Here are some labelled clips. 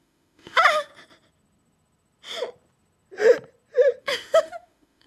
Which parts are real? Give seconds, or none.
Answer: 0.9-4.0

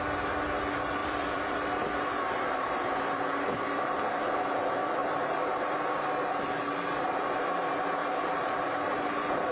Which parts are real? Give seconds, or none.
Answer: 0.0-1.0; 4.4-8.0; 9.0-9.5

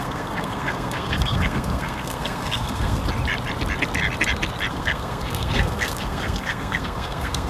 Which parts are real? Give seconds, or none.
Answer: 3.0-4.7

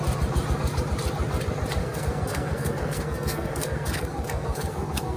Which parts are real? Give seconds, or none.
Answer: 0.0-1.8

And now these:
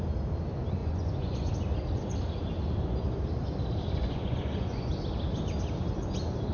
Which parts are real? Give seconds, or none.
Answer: 0.0-0.8; 1.5-4.0; 4.9-6.5

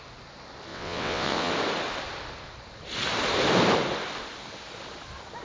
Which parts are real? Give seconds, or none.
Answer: 0.0-0.7; 1.5-5.4

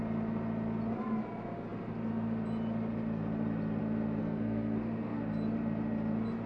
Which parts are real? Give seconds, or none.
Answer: 0.0-4.2; 5.2-6.5

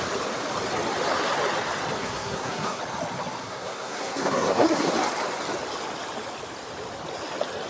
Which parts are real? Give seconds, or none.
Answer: 0.0-2.0; 2.8-3.4; 4.9-7.7